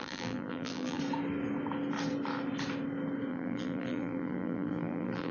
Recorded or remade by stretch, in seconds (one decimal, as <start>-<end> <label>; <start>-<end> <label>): 0.0-1.0 remade; 1.0-3.3 recorded; 3.3-5.3 remade

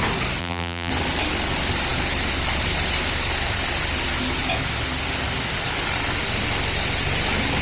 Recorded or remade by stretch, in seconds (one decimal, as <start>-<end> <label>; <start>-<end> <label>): 0.0-0.4 recorded; 0.4-0.9 remade; 0.9-7.6 recorded